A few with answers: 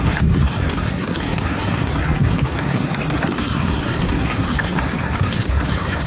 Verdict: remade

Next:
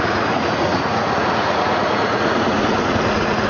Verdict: remade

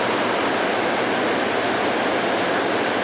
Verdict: recorded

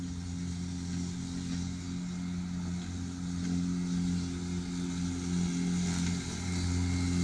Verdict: recorded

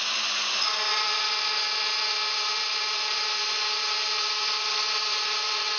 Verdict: remade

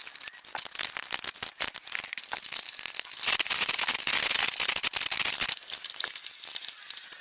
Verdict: recorded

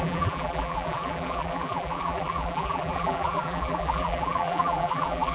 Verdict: remade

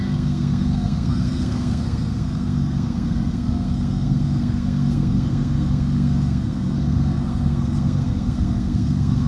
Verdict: remade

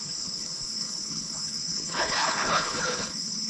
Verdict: remade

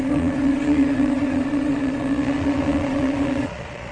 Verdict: remade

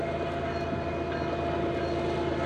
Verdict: recorded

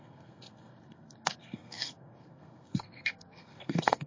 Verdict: remade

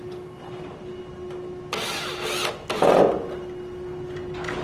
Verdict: recorded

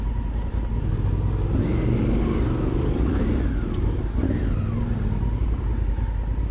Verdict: recorded